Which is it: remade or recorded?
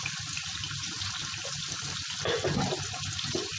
recorded